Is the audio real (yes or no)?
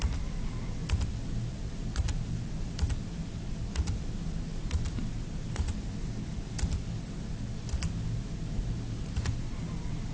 yes